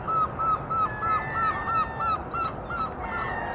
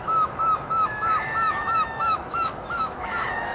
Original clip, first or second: first